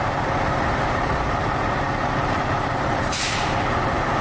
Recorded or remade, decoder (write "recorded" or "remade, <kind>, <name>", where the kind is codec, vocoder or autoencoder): remade, vocoder, BigVGAN v2